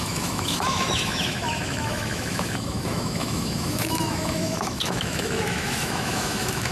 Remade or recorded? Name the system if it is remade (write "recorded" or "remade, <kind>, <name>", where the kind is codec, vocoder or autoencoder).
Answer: remade, autoencoder, DAC-VAE